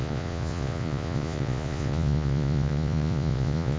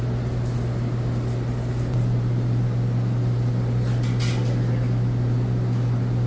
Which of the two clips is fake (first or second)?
first